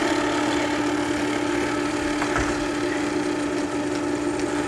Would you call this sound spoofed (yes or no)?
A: no